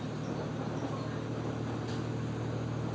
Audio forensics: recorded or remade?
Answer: recorded